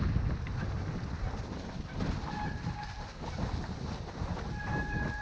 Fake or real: real